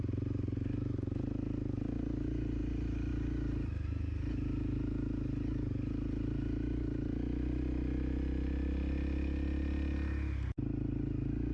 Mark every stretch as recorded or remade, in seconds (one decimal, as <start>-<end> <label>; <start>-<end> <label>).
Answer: 0.0-11.5 recorded

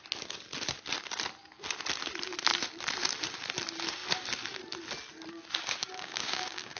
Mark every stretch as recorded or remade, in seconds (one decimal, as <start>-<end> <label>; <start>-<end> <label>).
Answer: 0.0-5.8 recorded; 5.8-6.8 remade

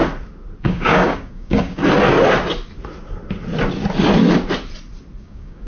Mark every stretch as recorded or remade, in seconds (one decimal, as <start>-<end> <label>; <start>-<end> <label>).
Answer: 0.0-0.6 recorded; 0.6-1.8 remade; 1.8-5.2 recorded; 5.2-5.7 remade

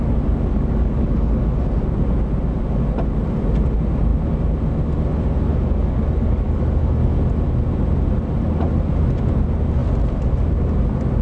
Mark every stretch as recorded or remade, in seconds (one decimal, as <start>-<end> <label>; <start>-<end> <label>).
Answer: 0.0-0.5 recorded; 0.5-1.6 remade; 1.6-5.5 recorded; 5.5-7.1 remade; 7.1-11.2 recorded

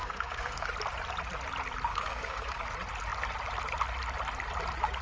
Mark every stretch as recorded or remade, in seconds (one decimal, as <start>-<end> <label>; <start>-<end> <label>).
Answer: 0.0-0.7 remade; 0.7-1.9 recorded; 1.9-2.6 remade; 2.6-5.0 recorded

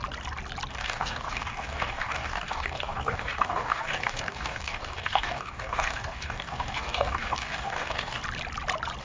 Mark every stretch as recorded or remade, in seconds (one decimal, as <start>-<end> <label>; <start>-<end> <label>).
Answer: 0.0-0.7 recorded; 0.7-8.2 remade; 8.2-9.0 recorded